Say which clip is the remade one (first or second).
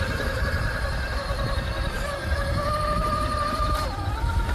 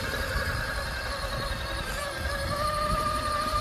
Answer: first